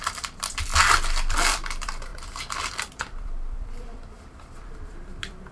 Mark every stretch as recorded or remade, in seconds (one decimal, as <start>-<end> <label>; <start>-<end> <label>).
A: 0.0-0.7 remade; 0.7-1.3 recorded; 1.3-5.5 remade